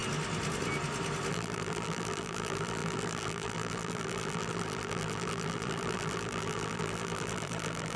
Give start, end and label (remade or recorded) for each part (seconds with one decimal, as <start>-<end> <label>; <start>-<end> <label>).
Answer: 0.0-1.3 recorded; 1.3-8.0 remade